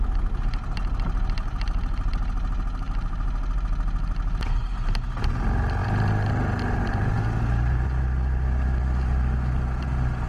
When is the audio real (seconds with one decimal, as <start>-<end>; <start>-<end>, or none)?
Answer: 0.0-10.3